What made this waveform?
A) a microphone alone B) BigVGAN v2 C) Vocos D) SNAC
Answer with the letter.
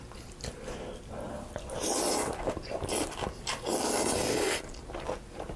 A